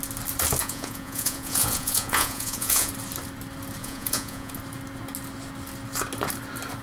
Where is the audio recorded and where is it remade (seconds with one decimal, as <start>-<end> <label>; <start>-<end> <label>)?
0.0-0.6 recorded; 0.6-2.9 remade; 2.9-3.8 recorded; 3.8-4.5 remade; 4.5-6.8 recorded